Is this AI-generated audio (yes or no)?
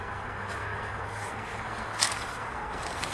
yes